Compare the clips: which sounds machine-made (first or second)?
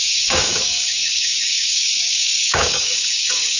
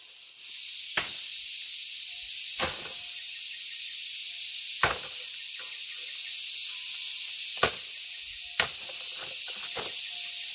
first